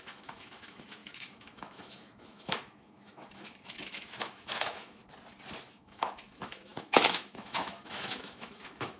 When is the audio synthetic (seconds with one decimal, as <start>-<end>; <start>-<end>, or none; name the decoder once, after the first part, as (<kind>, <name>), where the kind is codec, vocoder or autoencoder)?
0.0-5.0 (autoencoder, DAC-VAE); 5.7-9.0